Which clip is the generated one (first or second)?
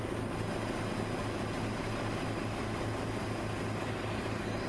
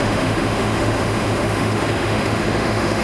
second